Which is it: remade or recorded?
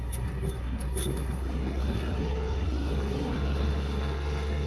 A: remade